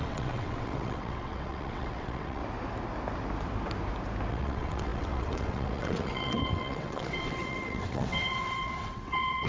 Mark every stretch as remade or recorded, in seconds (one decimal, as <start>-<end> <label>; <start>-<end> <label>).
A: 0.0-2.4 remade; 2.4-4.3 recorded; 4.3-9.5 remade

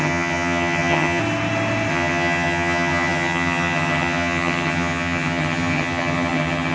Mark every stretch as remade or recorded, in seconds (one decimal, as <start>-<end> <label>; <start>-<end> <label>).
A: 0.0-1.2 remade; 1.2-1.9 recorded; 1.9-6.7 remade

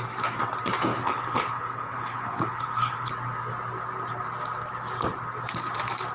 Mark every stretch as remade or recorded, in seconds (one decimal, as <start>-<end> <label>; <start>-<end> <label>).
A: 0.0-0.9 recorded; 0.9-3.1 remade; 3.1-6.1 recorded

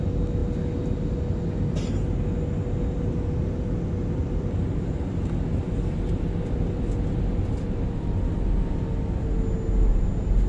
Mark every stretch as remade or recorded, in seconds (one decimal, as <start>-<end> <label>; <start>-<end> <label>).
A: 0.0-10.5 recorded

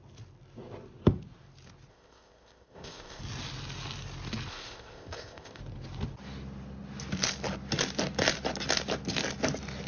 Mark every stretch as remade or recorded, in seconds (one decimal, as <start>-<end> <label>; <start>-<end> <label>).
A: 0.0-1.9 recorded; 1.9-3.2 remade; 3.2-4.5 recorded; 4.5-5.6 remade; 5.6-9.9 recorded